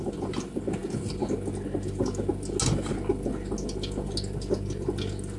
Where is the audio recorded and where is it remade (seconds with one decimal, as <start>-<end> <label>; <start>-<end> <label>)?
0.0-5.4 recorded